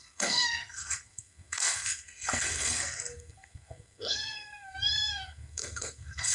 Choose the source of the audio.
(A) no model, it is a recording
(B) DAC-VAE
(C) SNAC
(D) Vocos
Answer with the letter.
C